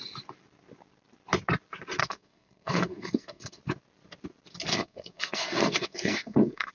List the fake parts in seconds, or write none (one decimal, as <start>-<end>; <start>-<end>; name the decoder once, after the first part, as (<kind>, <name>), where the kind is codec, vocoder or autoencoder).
2.0-3.6 (codec, SNAC); 4.7-6.7